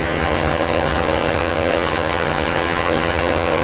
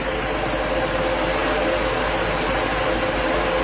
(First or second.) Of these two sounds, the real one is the second